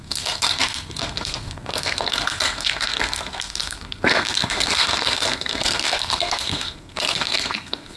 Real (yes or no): no